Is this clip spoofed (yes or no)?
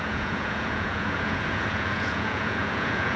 yes